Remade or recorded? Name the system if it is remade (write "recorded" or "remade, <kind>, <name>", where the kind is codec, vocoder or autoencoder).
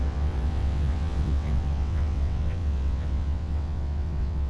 remade, vocoder, WaveNeXt